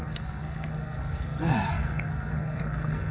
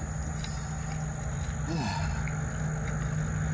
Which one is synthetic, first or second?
first